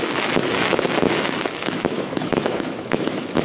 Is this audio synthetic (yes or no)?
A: yes